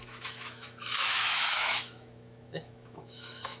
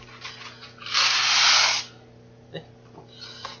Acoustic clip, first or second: second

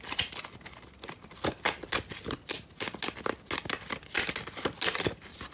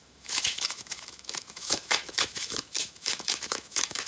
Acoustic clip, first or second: first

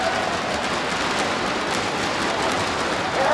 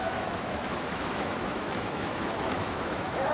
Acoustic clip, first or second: first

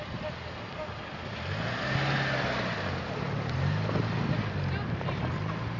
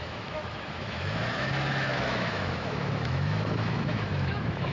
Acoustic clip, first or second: first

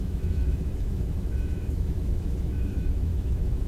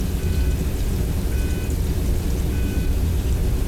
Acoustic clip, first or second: second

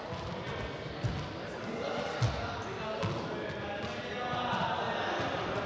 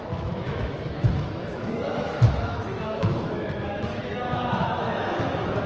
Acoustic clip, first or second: first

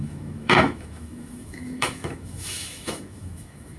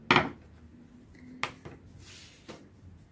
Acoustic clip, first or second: second